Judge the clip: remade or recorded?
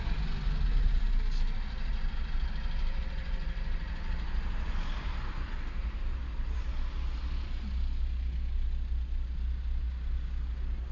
recorded